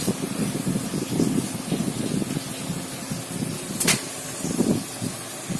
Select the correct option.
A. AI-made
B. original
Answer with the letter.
B